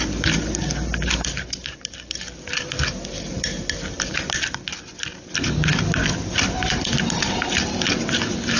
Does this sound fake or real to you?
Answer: fake